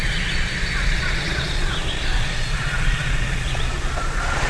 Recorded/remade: remade